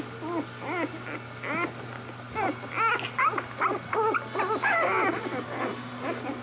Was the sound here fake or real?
real